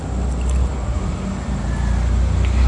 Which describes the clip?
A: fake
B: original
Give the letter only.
B